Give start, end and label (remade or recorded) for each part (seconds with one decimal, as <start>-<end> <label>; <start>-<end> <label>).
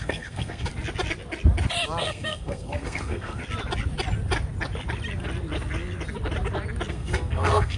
0.0-0.7 remade; 0.7-2.0 recorded; 2.0-3.4 remade; 3.4-6.9 recorded; 6.9-7.8 remade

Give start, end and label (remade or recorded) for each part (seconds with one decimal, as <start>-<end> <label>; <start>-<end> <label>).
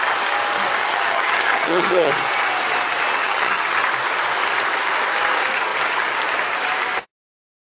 0.0-0.8 recorded; 0.8-2.1 remade; 2.1-3.2 recorded; 3.2-3.8 remade; 3.8-7.7 recorded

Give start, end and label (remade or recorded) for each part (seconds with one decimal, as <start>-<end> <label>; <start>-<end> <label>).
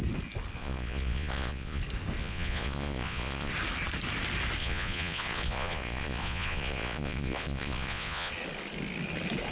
0.0-0.6 recorded; 0.6-1.8 remade; 1.8-2.2 recorded; 2.2-3.5 remade; 3.5-4.6 recorded; 4.6-8.3 remade; 8.3-9.5 recorded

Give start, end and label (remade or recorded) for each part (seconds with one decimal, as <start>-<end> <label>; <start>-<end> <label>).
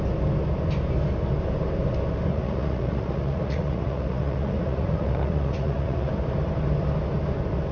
0.0-2.3 recorded; 2.3-6.1 remade; 6.1-7.7 recorded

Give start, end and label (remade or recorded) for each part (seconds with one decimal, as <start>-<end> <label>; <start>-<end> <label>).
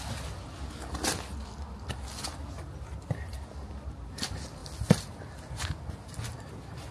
0.0-6.9 recorded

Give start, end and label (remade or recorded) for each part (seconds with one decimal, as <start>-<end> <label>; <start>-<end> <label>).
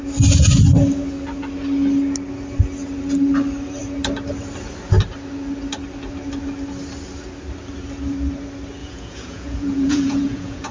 0.0-8.8 recorded; 8.8-10.7 remade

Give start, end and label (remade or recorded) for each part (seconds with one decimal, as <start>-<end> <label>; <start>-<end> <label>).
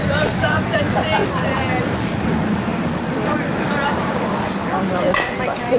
0.0-1.2 remade; 1.2-2.0 recorded; 2.0-5.8 remade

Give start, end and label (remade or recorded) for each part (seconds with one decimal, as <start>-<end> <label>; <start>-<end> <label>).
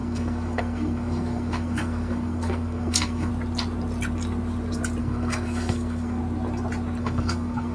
0.0-3.3 remade; 3.3-5.0 recorded; 5.0-6.2 remade; 6.2-7.0 recorded; 7.0-7.7 remade